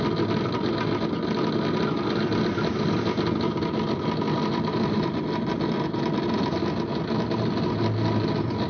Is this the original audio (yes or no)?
yes